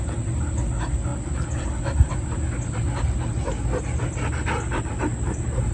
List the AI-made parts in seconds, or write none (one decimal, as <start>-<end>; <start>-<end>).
none